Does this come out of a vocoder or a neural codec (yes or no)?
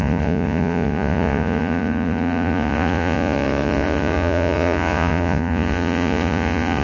yes